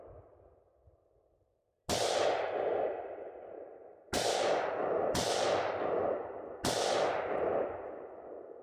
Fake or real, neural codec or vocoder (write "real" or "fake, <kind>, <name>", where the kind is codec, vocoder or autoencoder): real